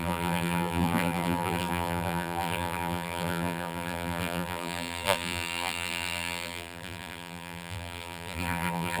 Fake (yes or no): yes